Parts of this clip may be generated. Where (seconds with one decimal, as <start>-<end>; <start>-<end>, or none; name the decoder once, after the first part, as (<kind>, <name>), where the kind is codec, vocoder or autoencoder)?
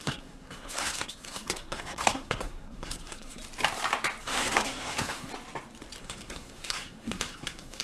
0.0-3.4 (codec, SNAC); 4.2-5.3; 6.0-7.8